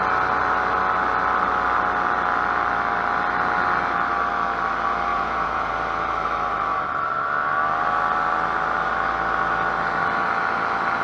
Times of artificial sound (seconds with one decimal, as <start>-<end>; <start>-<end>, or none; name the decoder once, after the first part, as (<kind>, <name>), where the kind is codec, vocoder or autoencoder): 5.1-5.7 (vocoder, Vocos)

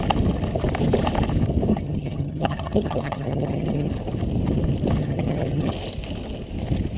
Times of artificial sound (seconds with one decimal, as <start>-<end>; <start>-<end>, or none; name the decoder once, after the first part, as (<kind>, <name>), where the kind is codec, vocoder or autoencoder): 1.7-3.9 (vocoder, HiFi-GAN); 5.0-5.7

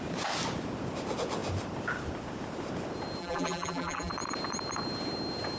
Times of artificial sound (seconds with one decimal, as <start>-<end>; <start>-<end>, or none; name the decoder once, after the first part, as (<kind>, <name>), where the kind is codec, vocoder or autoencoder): 3.2-4.1 (vocoder, BigVGAN v2)